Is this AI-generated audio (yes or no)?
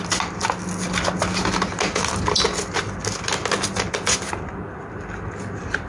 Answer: no